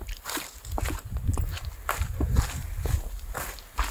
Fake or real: real